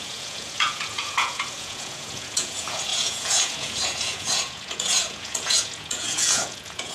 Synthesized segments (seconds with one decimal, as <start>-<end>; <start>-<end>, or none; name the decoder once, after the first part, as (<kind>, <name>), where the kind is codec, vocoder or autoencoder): 0.0-6.9 (vocoder, Vocos)